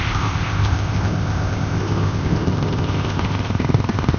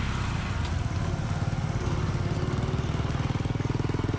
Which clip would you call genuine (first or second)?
second